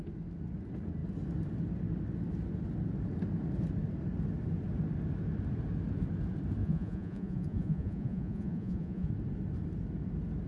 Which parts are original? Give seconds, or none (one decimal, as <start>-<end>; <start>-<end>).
0.0-6.6; 9.1-10.5